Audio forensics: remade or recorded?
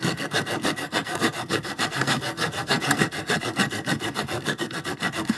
remade